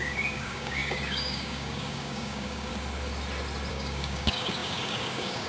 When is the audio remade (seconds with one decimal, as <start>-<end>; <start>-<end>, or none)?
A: 0.0-2.7; 3.7-5.5